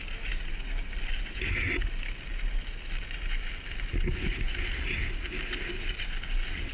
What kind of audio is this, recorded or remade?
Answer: recorded